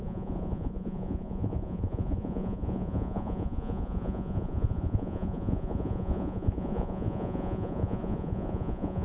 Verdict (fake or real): fake